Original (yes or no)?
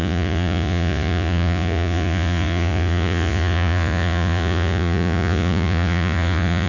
no